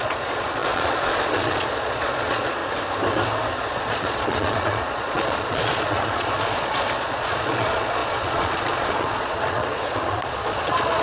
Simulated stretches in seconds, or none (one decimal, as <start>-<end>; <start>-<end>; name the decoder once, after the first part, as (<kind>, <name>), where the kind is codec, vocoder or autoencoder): 0.0-2.6 (vocoder, Vocos); 3.7-11.0